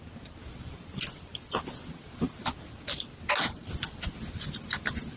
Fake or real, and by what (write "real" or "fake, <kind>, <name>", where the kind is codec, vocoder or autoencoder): real